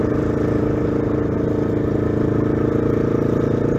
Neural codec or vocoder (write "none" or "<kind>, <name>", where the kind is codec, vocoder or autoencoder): none